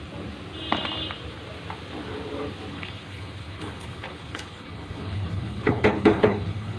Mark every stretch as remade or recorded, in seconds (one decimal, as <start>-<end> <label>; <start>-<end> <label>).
0.0-2.7 recorded; 2.7-6.8 remade